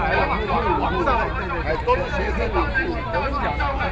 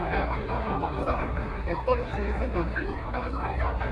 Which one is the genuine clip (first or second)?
first